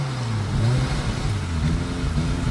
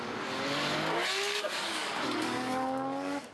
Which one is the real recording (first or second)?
first